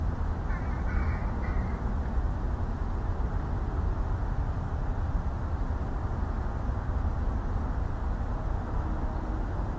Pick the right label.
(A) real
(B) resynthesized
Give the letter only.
A